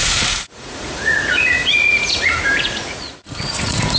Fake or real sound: fake